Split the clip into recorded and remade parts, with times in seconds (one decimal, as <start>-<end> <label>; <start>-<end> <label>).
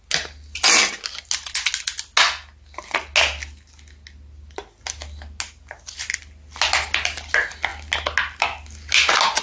0.0-9.4 recorded